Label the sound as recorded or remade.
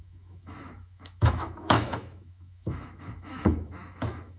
remade